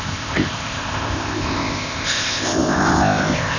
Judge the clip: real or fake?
fake